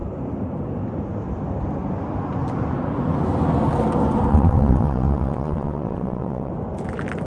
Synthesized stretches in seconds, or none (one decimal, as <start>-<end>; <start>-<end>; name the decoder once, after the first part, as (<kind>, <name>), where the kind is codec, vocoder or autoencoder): 4.3-6.5 (vocoder, WaveNeXt)